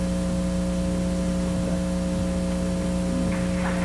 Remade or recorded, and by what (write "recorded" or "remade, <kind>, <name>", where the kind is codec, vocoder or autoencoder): recorded